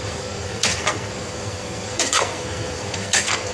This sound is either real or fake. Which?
fake